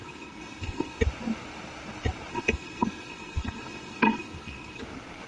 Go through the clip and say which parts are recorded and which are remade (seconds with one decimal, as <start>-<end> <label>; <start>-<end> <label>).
0.0-1.0 remade; 1.0-2.3 recorded; 2.3-4.8 remade; 4.8-5.3 recorded